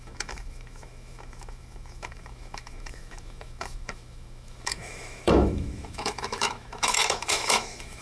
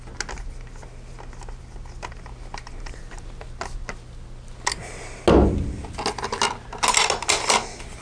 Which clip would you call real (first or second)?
second